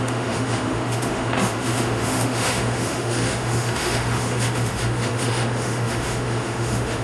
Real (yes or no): no